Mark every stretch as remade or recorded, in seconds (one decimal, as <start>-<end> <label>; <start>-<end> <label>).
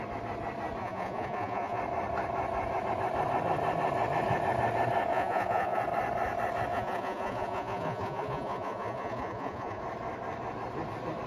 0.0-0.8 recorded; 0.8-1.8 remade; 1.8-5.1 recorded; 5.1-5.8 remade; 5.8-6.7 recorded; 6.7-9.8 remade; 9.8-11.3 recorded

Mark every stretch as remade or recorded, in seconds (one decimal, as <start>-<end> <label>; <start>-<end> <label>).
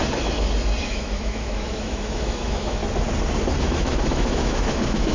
0.0-0.8 recorded; 0.8-2.8 remade; 2.8-3.6 recorded; 3.6-5.1 remade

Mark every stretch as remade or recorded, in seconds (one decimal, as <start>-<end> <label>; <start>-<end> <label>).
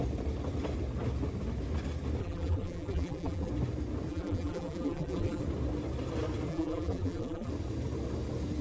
0.0-2.2 recorded; 2.2-3.5 remade; 3.5-4.1 recorded; 4.1-5.4 remade; 5.4-6.5 recorded; 6.5-7.5 remade; 7.5-8.6 recorded